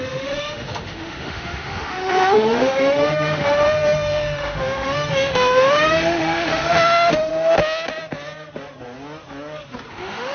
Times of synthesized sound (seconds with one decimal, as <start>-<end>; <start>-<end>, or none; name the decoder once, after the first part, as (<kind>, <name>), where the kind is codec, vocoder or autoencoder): 0.0-7.3 (autoencoder, DAC-VAE); 9.9-10.3